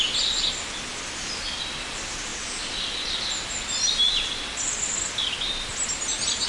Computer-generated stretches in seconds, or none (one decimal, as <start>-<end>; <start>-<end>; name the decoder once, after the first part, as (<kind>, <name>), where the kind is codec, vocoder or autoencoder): 2.3-3.2 (vocoder, BigVGAN v2)